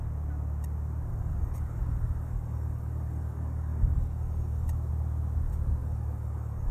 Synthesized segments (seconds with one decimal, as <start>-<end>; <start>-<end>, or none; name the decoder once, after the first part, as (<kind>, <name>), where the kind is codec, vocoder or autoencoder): 1.1-4.9 (codec, DAC); 5.8-6.7

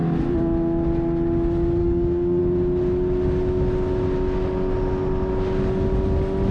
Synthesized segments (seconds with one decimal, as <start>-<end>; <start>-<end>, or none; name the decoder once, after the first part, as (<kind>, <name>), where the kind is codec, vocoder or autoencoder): 1.8-2.4 (codec, DAC)